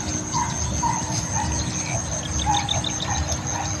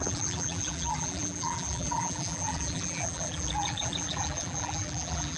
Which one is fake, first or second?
second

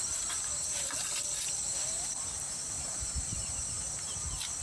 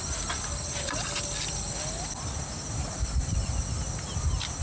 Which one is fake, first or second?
first